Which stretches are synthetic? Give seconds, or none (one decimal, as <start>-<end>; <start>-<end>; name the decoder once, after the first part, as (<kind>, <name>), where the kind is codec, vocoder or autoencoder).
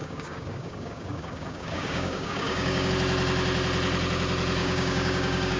0.0-2.9 (codec, DAC); 4.6-5.6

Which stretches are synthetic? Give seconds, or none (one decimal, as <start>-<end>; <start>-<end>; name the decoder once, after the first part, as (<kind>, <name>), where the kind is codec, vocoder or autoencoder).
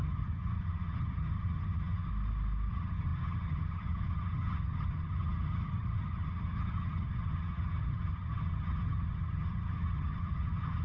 0.0-2.1 (vocoder, HiFi-GAN); 2.7-10.8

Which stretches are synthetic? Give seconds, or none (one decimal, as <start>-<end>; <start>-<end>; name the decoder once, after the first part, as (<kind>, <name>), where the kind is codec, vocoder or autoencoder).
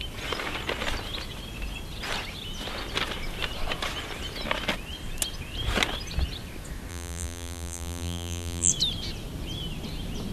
6.9-8.7 (vocoder, BigVGAN v2)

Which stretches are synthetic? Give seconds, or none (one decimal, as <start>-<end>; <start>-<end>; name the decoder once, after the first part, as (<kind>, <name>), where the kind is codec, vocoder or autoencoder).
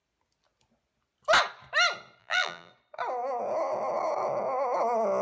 2.2-2.7 (vocoder, BigVGAN v2)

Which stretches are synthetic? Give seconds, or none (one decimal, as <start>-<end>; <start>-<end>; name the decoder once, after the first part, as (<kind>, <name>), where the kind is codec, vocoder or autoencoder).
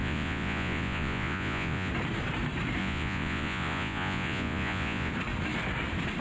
0.0-1.9 (vocoder, Vocos); 2.8-5.1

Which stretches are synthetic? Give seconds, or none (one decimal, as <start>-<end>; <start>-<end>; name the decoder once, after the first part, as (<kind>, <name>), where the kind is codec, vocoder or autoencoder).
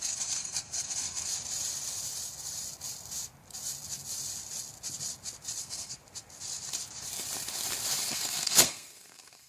0.0-1.3 (codec, SNAC); 5.6-6.0; 8.1-9.5